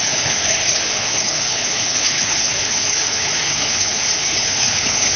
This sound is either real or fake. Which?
fake